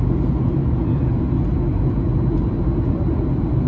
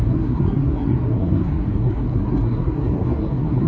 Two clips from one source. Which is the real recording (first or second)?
first